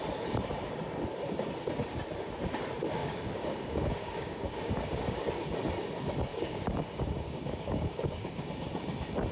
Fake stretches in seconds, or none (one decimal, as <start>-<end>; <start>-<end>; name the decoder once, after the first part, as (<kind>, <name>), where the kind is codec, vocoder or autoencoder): 3.0-5.3 (codec, DAC); 6.3-8.5